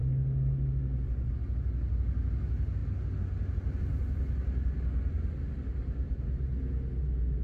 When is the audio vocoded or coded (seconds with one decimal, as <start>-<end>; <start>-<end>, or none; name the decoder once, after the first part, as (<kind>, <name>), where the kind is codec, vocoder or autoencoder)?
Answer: none